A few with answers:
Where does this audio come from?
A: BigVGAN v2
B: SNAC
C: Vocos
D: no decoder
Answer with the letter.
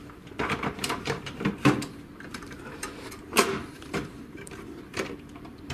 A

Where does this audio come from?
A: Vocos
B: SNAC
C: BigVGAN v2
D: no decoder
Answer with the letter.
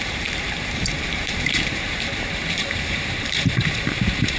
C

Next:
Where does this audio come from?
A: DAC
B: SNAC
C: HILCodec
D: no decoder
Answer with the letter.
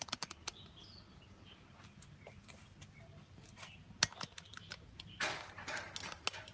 D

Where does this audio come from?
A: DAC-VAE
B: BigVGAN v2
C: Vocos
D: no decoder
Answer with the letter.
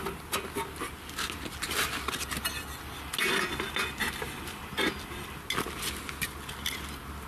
D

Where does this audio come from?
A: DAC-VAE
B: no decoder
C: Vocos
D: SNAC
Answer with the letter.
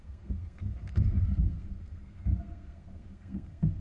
D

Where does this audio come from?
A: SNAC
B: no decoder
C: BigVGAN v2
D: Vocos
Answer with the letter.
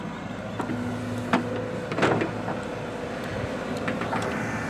B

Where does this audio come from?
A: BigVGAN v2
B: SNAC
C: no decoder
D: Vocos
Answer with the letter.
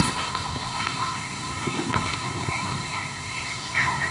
B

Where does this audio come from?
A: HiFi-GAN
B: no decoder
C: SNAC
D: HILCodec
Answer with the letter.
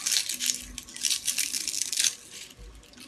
B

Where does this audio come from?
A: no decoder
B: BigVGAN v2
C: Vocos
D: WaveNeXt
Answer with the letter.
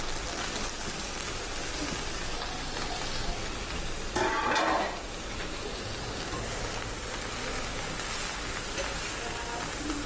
A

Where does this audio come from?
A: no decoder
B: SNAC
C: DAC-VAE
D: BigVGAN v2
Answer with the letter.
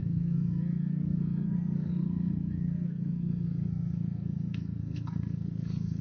B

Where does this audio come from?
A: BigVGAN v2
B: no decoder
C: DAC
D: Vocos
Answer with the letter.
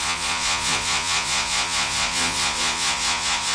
D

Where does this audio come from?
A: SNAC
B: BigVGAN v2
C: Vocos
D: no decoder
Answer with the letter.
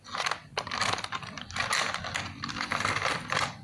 D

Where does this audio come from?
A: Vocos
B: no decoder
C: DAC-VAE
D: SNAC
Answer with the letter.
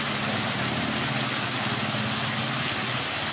B